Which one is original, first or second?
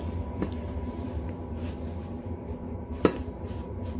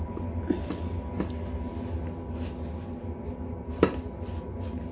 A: second